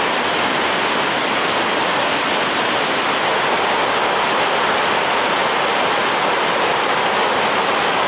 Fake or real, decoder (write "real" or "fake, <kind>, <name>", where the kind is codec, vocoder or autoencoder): real